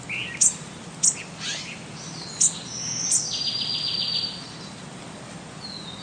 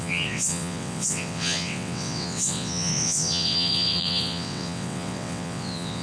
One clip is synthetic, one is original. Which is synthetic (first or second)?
second